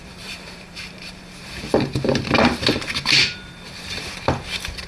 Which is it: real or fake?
fake